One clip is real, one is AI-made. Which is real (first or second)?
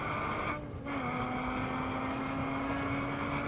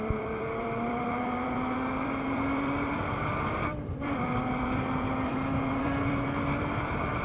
first